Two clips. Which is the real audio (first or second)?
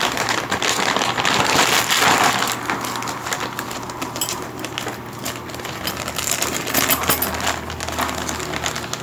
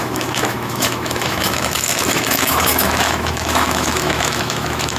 first